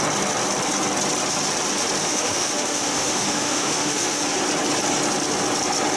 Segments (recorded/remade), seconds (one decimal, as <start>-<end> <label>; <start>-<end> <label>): 0.0-2.0 recorded; 2.0-4.2 remade; 4.2-6.0 recorded